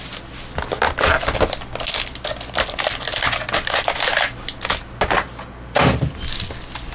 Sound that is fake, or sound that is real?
real